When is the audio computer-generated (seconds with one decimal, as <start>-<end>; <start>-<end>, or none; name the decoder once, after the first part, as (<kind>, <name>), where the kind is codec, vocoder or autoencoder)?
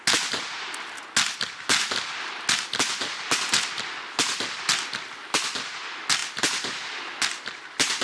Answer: none